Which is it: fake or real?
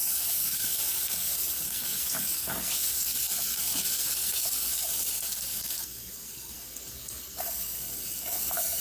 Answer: fake